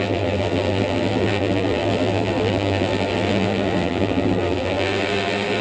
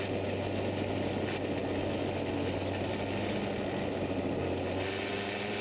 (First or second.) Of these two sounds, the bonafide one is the second